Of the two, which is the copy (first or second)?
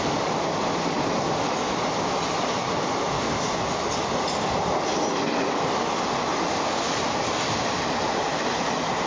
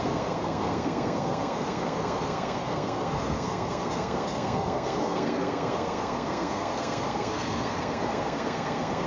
second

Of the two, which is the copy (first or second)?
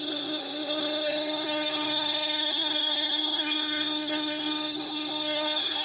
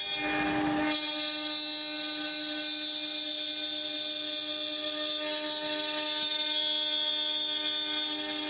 first